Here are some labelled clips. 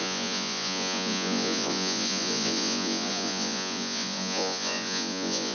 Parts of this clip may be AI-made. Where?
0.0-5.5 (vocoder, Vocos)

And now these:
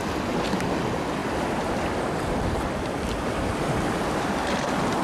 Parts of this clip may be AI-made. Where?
1.2-4.2 (vocoder, BigVGAN v2)

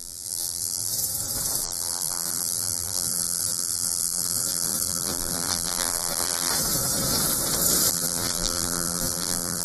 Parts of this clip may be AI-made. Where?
0.0-0.9 (vocoder, BigVGAN v2); 1.6-6.5; 7.9-9.6